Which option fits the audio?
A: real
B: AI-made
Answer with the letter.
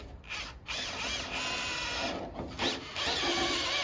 A